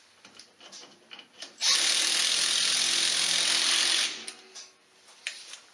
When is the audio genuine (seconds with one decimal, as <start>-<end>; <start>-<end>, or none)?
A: 0.0-5.7